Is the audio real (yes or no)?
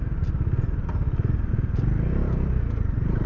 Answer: yes